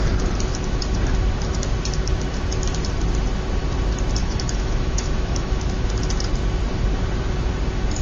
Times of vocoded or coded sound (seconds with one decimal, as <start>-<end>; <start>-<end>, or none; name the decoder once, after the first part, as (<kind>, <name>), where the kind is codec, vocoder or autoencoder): 4.2-5.9 (autoencoder, DAC-VAE)